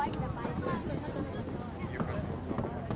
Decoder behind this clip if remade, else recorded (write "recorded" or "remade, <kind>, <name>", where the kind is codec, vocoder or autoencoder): recorded